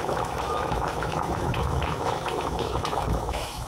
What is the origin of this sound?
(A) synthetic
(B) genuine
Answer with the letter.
A